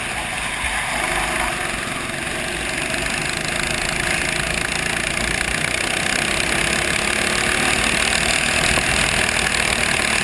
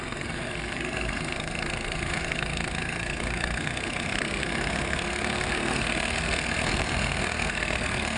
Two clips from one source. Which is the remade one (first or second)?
second